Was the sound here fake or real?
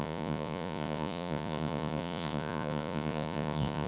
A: fake